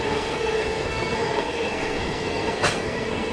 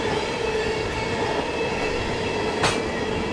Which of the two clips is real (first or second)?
second